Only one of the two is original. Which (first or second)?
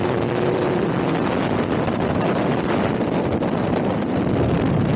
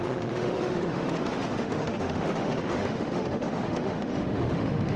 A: first